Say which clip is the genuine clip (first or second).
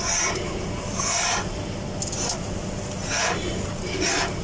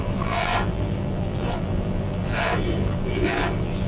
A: first